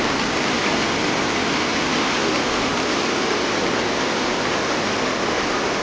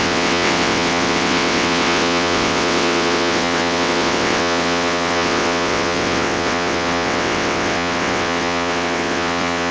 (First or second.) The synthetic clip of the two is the second